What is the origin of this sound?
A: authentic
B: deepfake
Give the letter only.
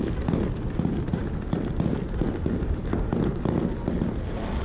A